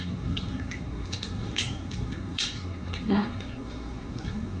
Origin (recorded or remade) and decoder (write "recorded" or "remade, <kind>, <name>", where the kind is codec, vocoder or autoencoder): remade, codec, SNAC